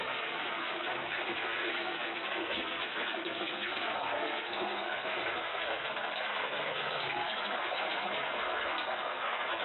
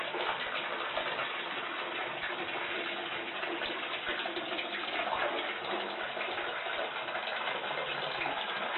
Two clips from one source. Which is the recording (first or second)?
second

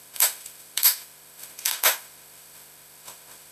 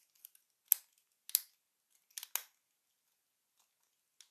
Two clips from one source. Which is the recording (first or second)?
second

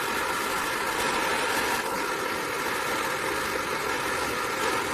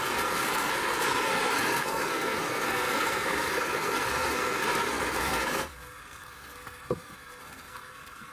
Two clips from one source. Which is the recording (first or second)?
first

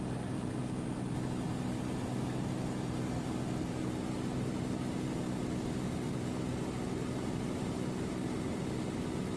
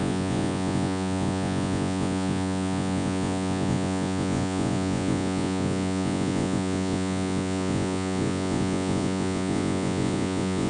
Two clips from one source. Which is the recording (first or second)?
first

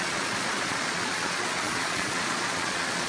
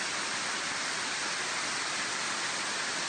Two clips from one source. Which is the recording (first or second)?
second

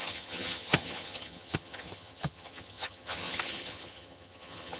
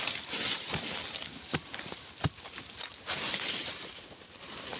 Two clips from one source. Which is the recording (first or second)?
second